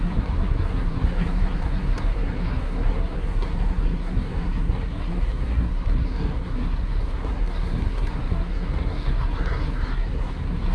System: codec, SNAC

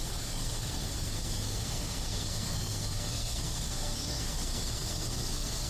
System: codec, SNAC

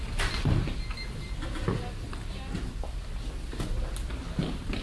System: none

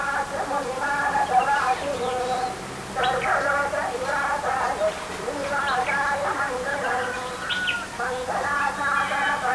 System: none